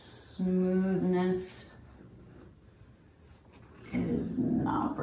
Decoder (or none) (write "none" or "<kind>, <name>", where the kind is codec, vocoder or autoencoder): none